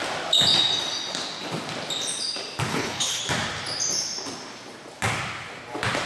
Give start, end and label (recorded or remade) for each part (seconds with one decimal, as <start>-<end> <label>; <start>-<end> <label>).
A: 0.0-2.7 recorded; 2.7-3.2 remade; 3.2-6.1 recorded